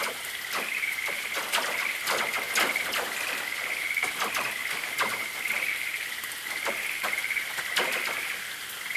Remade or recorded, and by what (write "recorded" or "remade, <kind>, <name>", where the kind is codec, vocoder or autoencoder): recorded